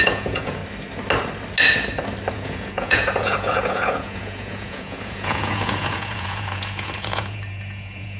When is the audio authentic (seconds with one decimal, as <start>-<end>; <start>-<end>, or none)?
0.6-2.3